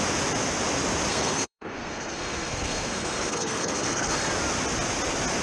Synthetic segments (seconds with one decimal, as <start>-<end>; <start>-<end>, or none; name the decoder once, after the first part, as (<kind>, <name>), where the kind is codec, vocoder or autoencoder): 1.1-4.3 (codec, SNAC)